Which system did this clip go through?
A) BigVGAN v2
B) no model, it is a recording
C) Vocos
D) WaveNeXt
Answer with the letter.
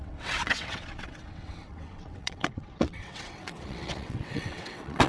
D